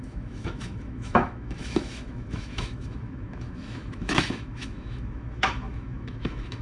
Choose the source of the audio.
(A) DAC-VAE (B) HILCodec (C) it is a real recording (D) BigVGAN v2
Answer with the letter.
A